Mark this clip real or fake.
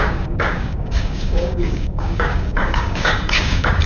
fake